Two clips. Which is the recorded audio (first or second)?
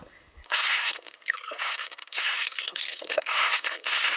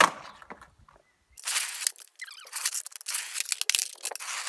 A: second